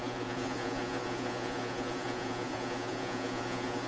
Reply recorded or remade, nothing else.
remade